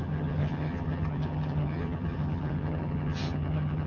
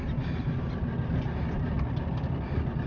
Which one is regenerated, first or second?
first